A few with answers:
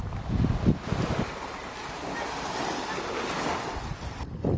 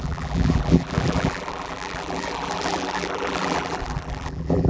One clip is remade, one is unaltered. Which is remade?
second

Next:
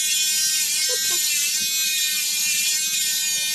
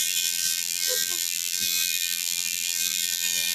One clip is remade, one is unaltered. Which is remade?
second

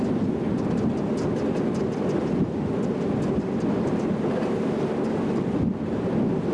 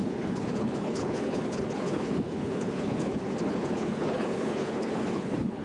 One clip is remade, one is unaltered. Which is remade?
second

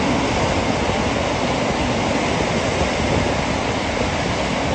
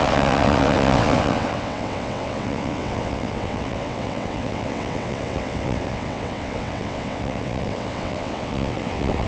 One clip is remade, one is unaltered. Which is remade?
second